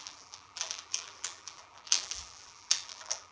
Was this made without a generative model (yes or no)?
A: no